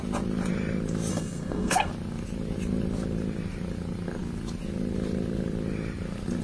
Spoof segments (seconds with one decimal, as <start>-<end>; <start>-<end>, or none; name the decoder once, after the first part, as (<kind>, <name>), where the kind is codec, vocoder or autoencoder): 1.1-1.9 (codec, SNAC)